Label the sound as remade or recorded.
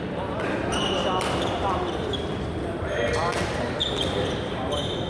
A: recorded